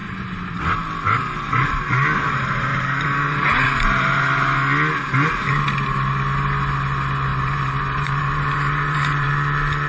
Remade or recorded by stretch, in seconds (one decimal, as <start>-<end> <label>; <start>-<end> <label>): 0.0-0.6 remade; 0.6-2.7 recorded; 2.7-4.2 remade; 4.2-7.3 recorded; 7.3-9.3 remade; 9.3-9.9 recorded